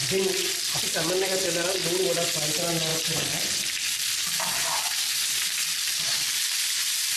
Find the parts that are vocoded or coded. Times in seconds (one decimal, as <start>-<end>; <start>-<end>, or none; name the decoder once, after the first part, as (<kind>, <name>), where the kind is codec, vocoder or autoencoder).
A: 2.9-7.2 (vocoder, BigVGAN v2)